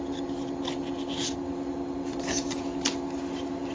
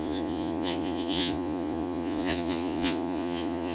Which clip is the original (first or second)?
first